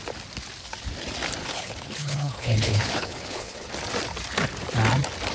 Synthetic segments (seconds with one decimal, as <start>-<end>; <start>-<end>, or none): 1.4-3.7